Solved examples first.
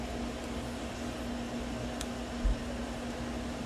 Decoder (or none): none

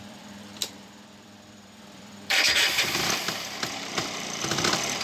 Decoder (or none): vocoder, BigVGAN v2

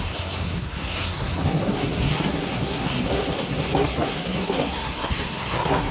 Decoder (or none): codec, SNAC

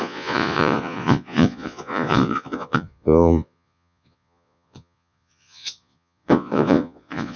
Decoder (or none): vocoder, Vocos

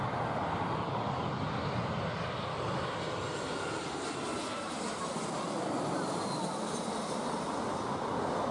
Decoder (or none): none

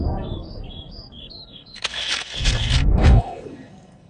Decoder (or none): codec, SNAC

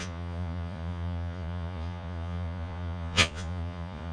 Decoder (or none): vocoder, Vocos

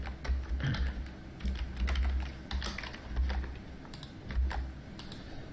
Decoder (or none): none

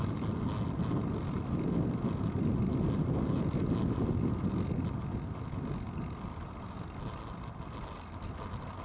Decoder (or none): none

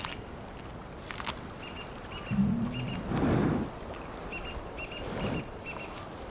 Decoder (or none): none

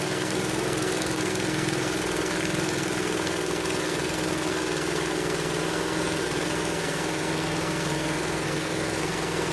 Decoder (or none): codec, SNAC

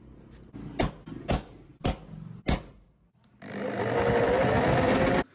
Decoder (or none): none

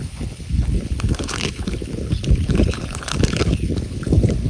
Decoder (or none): codec, HILCodec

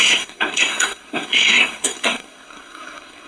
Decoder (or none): codec, SNAC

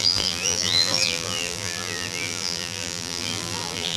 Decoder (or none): vocoder, BigVGAN v2